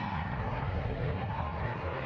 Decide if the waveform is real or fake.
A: fake